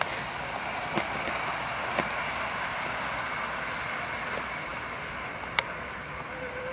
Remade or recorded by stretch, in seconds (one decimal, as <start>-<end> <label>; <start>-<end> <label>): 0.0-4.7 recorded; 4.7-6.1 remade; 6.1-6.7 recorded